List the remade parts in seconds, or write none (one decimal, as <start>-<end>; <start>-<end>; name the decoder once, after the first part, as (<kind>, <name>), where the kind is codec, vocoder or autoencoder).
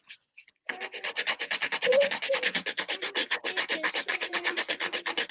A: 0.0-3.2 (vocoder, Vocos); 3.9-5.3